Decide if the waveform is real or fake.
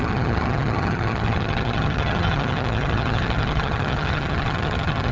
fake